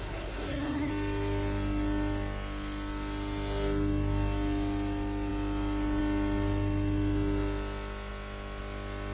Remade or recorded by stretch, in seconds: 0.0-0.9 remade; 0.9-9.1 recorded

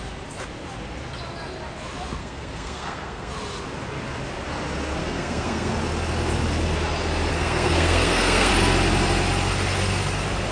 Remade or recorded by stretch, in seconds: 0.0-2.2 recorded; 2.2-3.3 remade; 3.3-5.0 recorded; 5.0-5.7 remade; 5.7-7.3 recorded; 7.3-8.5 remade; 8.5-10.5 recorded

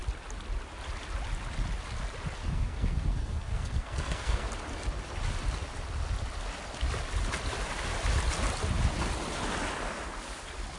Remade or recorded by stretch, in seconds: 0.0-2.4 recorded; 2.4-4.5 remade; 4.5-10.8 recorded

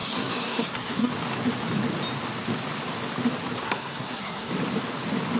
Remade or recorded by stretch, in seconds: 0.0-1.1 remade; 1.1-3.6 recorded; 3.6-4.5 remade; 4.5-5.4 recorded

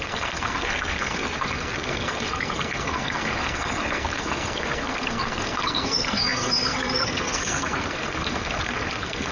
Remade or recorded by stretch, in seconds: 0.0-9.3 remade